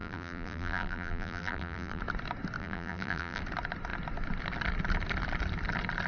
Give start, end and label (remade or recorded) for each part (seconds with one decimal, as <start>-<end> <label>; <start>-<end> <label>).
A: 0.0-2.0 remade; 2.0-2.6 recorded; 2.6-3.4 remade; 3.4-6.1 recorded